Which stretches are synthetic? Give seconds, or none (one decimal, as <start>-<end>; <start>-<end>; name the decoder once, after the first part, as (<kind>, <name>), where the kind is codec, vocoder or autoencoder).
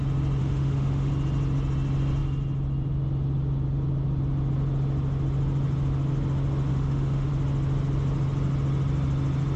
0.4-1.1 (autoencoder, DAC-VAE); 6.7-7.3